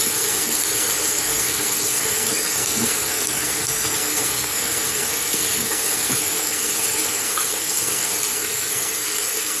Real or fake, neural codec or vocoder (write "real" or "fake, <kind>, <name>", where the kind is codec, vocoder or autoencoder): fake, codec, SNAC